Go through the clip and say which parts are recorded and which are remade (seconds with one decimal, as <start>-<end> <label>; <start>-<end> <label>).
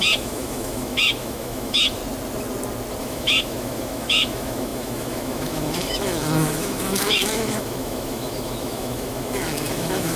0.0-2.0 remade; 2.0-3.0 recorded; 3.0-10.2 remade